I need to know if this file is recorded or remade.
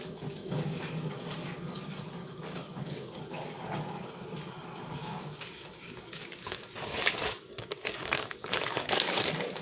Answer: remade